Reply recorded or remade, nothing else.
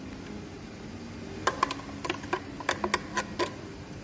recorded